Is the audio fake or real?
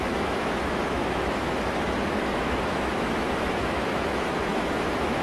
fake